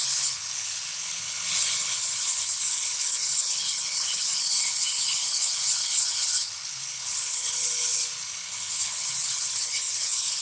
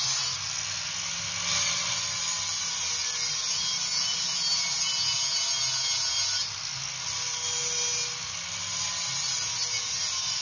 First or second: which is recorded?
second